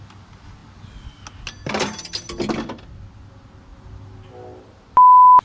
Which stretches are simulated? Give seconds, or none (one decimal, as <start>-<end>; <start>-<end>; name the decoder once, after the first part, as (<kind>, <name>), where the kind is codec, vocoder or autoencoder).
none